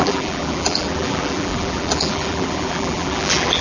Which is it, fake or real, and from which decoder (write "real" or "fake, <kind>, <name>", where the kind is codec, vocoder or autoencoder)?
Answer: fake, vocoder, BigVGAN v2